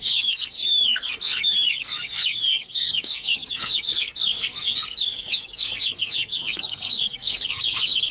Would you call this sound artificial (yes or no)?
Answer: yes